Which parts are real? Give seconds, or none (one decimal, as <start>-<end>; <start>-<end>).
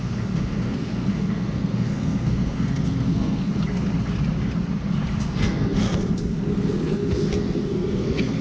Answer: 3.5-5.2